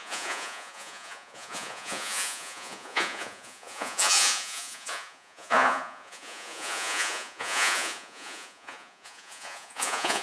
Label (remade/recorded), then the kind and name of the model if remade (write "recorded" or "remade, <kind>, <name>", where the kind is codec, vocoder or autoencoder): remade, vocoder, Vocos